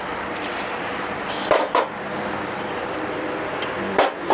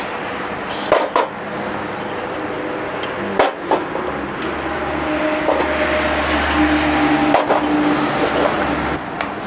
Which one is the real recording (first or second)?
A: second